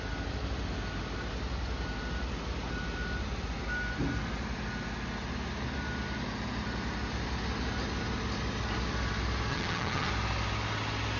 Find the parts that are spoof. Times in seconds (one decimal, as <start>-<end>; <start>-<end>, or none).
9.5-10.1